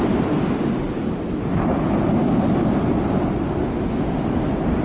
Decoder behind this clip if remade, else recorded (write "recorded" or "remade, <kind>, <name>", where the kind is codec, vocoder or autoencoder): recorded